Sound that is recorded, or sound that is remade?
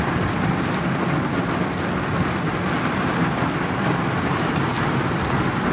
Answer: recorded